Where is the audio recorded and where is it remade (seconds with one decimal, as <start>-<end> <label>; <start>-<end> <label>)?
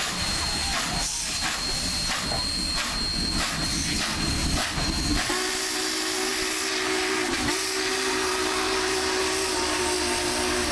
0.0-10.7 recorded